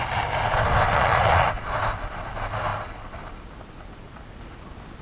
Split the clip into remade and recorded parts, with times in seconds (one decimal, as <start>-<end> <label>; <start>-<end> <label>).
0.0-0.9 recorded; 0.9-1.5 remade; 1.5-5.0 recorded